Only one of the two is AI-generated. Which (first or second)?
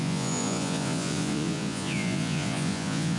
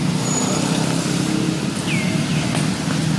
first